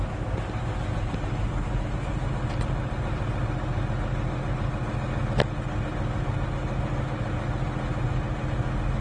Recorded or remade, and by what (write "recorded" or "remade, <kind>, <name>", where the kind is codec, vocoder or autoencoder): recorded